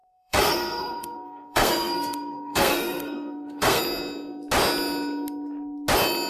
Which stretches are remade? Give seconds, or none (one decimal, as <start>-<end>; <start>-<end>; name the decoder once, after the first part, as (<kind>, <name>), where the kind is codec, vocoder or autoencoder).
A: 0.0-3.8 (codec, SNAC)